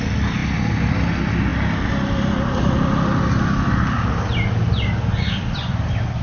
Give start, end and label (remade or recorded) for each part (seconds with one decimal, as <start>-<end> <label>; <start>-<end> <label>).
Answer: 0.0-6.2 recorded